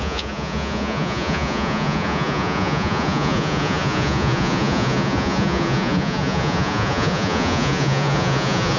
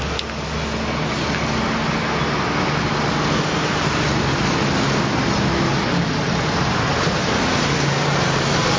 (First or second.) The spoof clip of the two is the first